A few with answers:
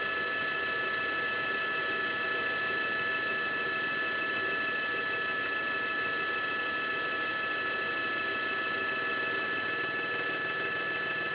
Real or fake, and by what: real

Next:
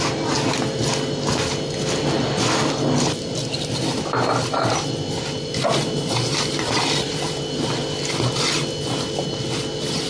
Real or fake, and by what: real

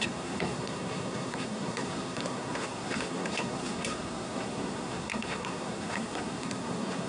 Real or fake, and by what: fake, codec, SNAC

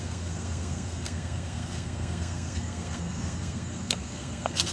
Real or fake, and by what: fake, codec, SNAC